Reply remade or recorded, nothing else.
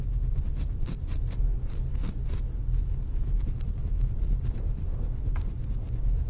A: recorded